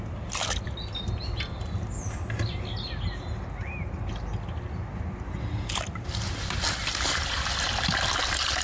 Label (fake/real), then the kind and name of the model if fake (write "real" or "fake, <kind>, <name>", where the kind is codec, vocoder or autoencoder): real